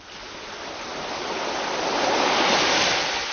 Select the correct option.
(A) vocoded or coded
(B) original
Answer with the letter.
B